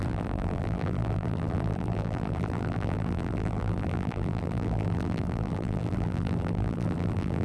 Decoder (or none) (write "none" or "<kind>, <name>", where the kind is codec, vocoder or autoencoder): vocoder, BigVGAN v2